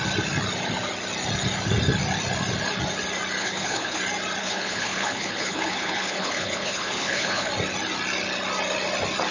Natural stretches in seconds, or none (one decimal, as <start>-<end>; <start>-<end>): 0.0-3.4; 4.0-4.4; 7.5-9.3